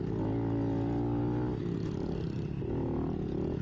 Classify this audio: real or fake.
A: real